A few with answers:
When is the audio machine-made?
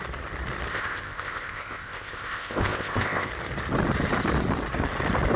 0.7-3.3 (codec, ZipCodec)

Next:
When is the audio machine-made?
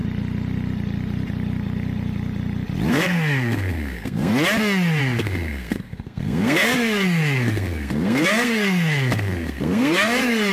2.9-4.3 (codec, SNAC); 5.0-10.5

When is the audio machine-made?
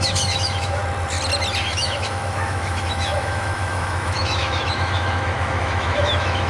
0.0-0.8 (autoencoder, DAC-VAE); 1.6-6.5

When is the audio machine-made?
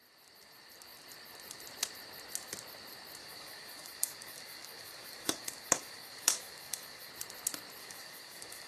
3.2-7.1 (codec, DAC); 7.8-8.7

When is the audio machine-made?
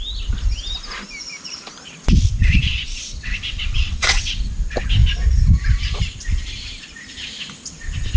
2.4-4.4 (vocoder, WaveNeXt)